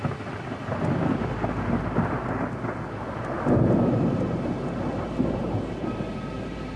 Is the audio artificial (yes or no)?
no